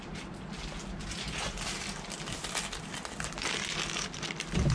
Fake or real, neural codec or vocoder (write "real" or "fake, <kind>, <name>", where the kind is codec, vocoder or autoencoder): real